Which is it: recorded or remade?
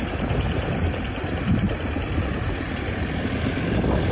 recorded